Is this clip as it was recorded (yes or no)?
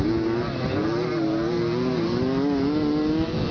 yes